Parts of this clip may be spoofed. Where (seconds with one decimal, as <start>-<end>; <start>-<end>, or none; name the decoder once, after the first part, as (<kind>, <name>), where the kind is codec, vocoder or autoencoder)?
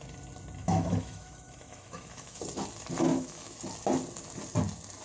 0.6-2.4 (autoencoder, DAC-VAE); 3.1-3.7